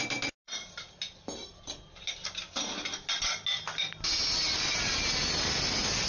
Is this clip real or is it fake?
real